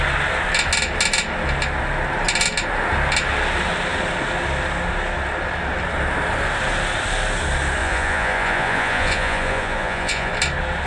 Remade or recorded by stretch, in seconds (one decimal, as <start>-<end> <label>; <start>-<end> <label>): 0.0-7.8 recorded; 7.8-10.3 remade; 10.3-10.9 recorded